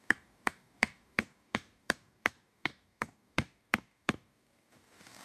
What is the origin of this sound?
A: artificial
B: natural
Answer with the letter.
A